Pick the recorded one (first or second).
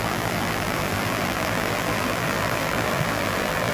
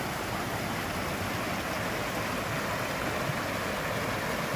second